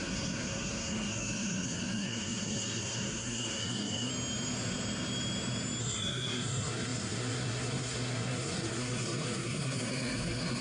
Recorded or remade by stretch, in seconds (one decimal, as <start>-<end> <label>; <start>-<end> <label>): 0.0-4.1 remade; 4.1-5.8 recorded; 5.8-10.6 remade